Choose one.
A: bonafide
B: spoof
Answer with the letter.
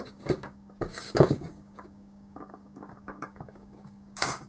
B